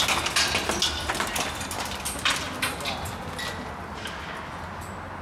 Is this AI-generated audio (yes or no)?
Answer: no